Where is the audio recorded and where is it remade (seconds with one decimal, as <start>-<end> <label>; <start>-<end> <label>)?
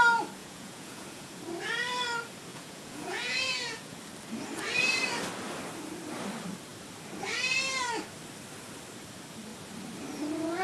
0.0-0.4 recorded; 0.4-1.4 remade; 1.4-2.5 recorded; 2.5-4.0 remade; 4.0-10.6 recorded